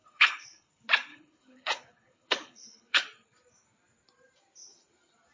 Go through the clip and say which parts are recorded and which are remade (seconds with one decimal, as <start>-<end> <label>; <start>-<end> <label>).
0.0-0.7 remade; 0.7-1.1 recorded; 1.1-3.0 remade; 3.0-5.3 recorded